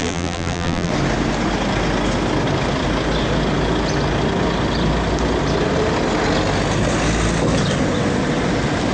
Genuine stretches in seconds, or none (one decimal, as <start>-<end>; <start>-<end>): 0.9-8.9